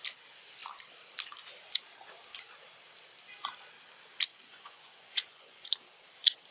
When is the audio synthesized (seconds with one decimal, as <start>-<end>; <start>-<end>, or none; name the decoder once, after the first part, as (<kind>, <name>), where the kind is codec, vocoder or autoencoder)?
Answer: 4.3-5.7 (vocoder, Vocos)